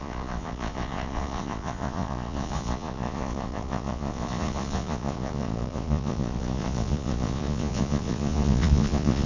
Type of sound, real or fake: fake